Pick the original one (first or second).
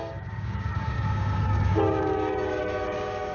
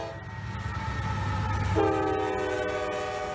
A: second